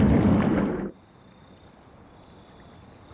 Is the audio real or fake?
real